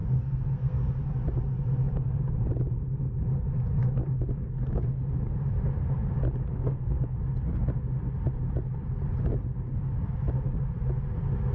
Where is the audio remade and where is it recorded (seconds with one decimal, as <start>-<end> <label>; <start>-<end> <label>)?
0.0-0.9 remade; 0.9-6.5 recorded; 6.5-7.0 remade; 7.0-11.5 recorded